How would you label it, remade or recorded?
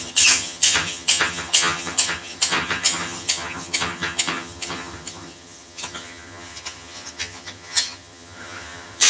remade